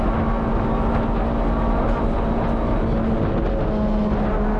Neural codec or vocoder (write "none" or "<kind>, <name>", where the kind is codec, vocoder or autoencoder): none